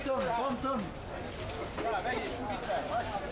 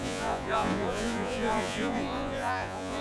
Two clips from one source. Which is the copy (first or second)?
second